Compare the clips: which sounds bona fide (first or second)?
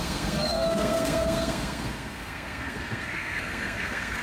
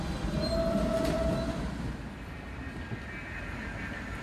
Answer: second